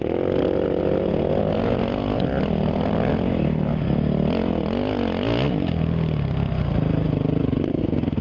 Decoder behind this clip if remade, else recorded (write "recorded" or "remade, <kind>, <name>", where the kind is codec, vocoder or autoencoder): recorded